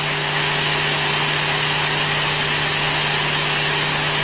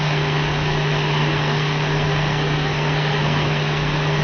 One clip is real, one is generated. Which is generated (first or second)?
second